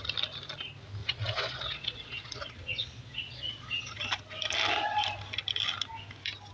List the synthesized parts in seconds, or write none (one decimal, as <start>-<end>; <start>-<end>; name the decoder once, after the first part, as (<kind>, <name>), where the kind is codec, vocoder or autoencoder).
1.0-4.0 (vocoder, Vocos)